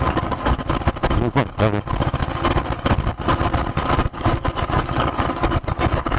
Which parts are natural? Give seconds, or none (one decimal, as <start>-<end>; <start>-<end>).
0.6-4.1